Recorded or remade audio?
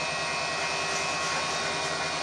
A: recorded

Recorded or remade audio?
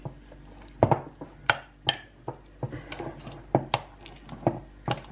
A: recorded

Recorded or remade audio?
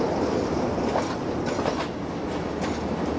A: recorded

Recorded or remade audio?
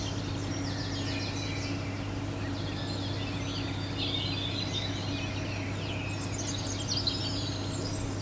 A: recorded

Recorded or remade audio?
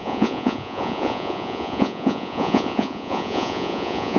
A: remade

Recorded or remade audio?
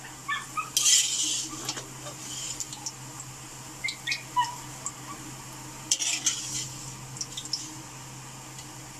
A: recorded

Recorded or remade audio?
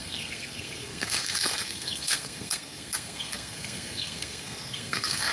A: remade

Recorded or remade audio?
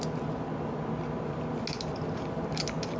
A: recorded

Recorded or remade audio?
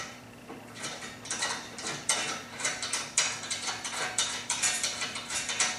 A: remade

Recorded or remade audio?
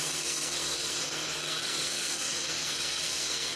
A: remade